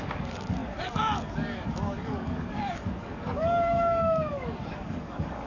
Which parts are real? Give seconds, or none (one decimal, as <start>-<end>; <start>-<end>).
none